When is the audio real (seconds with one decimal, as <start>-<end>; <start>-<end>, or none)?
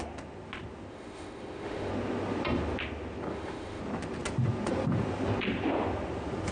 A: 0.0-0.9; 1.9-3.3; 3.8-6.5